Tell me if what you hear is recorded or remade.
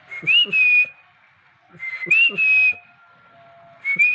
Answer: recorded